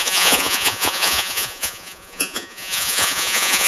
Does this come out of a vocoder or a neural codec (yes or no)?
yes